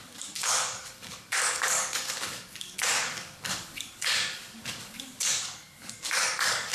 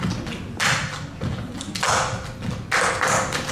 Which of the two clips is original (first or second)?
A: second